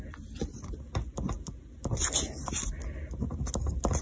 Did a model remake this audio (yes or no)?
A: no